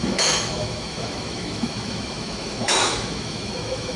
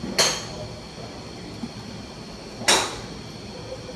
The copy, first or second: first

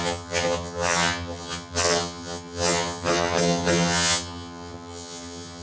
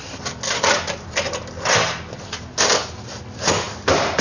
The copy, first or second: first